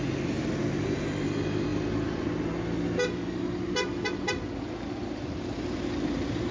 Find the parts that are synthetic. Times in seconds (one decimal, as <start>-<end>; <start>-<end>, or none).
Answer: none